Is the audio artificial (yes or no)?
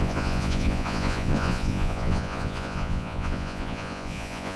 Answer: yes